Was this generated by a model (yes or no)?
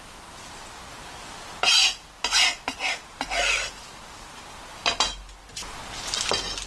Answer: no